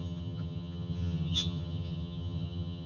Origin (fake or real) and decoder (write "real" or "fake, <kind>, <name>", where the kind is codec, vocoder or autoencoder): fake, vocoder, HiFi-GAN